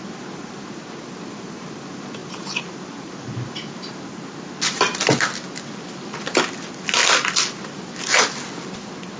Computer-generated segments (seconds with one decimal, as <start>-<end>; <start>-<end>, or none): 2.2-3.9